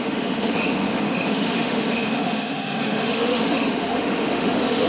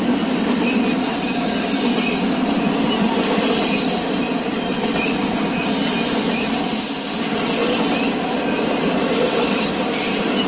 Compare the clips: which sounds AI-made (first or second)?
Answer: first